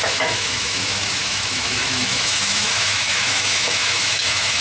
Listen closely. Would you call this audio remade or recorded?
remade